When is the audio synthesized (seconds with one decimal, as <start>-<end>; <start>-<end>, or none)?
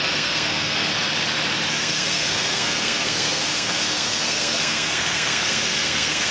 0.0-0.9; 1.7-6.3